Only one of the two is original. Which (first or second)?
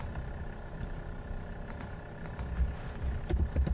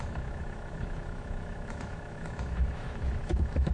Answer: first